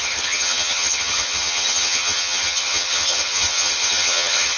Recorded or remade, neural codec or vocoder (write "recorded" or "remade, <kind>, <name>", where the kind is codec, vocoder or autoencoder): remade, vocoder, HiFi-GAN